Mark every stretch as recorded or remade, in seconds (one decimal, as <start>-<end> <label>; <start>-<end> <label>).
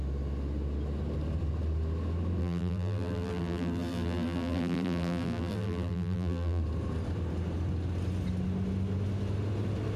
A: 0.0-2.4 recorded; 2.4-6.6 remade; 6.6-10.0 recorded